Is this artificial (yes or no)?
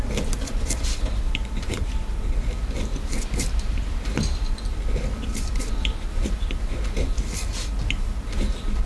yes